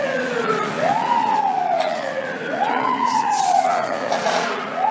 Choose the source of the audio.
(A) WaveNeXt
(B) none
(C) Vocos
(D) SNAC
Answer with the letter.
C